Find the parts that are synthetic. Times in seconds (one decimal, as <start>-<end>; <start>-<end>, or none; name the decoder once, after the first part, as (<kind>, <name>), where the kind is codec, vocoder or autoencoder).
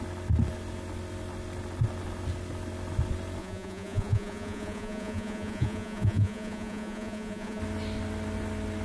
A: 3.4-7.6 (vocoder, Vocos)